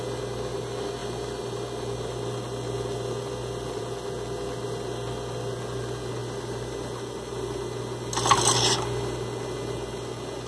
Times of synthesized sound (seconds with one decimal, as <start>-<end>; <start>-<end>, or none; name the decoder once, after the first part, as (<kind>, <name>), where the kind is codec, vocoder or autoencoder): 1.0-3.8 (vocoder, BigVGAN v2); 6.2-7.8